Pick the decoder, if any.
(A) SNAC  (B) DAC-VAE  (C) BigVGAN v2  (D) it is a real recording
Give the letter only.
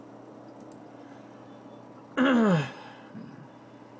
D